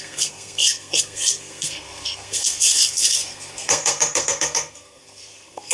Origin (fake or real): fake